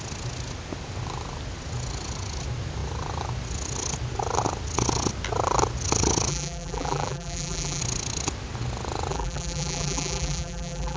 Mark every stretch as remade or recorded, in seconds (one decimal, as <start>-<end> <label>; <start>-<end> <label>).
0.0-6.3 recorded; 6.3-7.8 remade; 7.8-9.1 recorded; 9.1-11.0 remade